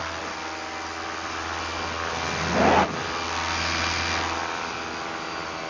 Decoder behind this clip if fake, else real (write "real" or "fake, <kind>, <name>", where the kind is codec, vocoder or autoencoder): real